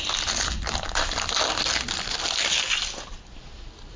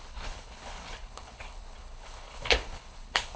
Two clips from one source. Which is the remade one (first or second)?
second